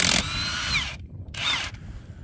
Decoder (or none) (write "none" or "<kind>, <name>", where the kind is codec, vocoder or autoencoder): none